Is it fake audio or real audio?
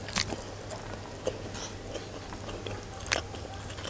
real